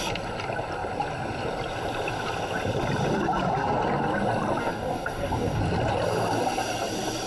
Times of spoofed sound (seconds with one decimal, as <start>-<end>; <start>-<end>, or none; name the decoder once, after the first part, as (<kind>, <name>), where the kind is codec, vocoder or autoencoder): 4.6-5.6 (codec, DAC)